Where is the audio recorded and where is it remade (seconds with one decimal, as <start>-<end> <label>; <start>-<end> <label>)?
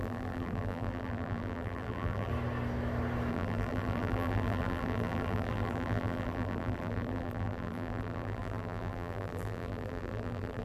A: 0.0-2.3 remade; 2.3-3.3 recorded; 3.3-10.6 remade